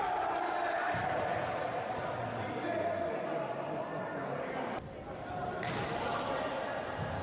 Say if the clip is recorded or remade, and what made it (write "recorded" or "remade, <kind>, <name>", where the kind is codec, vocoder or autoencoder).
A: recorded